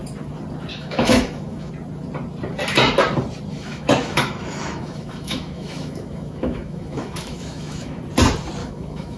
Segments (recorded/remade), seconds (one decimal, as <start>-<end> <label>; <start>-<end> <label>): 0.0-0.7 recorded; 0.7-1.7 remade; 1.7-3.5 recorded; 3.5-8.0 remade; 8.0-8.6 recorded; 8.6-9.2 remade